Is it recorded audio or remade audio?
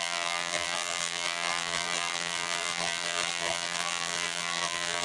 remade